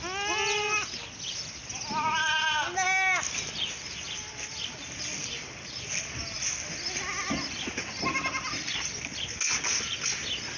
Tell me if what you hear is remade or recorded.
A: recorded